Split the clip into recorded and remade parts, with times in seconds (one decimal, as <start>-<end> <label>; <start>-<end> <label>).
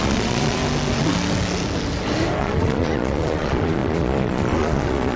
0.0-0.6 remade; 0.6-2.4 recorded; 2.4-5.2 remade